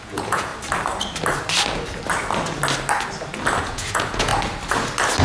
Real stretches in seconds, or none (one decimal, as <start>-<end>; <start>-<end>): 0.5-3.6; 4.3-5.2